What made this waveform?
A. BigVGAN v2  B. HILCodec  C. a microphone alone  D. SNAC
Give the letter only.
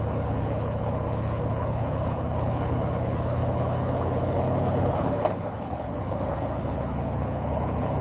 B